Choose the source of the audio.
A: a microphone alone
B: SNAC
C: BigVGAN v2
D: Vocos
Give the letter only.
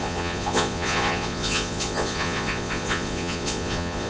D